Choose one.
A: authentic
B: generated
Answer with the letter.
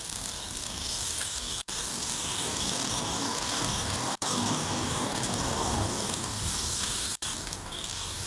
B